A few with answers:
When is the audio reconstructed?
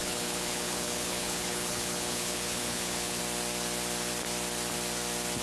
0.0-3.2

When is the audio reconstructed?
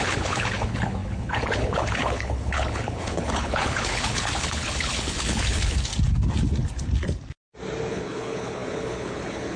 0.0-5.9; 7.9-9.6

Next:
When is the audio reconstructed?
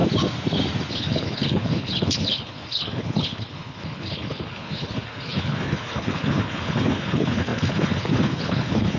0.9-9.0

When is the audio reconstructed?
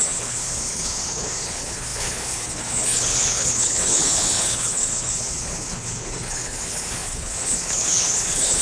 0.0-8.6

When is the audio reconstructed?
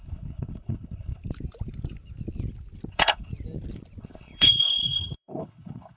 0.0-1.2; 2.9-3.3; 4.0-6.0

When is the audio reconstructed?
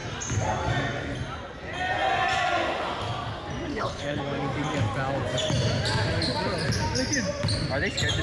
3.7-4.2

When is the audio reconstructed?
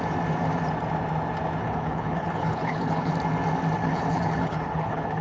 1.6-3.1; 3.8-5.2